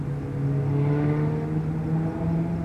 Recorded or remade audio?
recorded